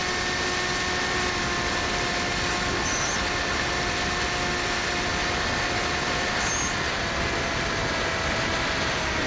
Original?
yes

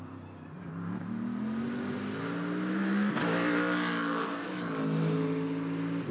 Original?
yes